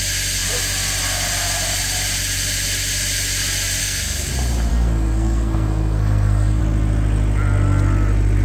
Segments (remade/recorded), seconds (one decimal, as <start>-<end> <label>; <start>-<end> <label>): 0.0-3.8 recorded; 3.8-4.3 remade; 4.3-4.7 recorded; 4.7-6.6 remade; 6.6-8.4 recorded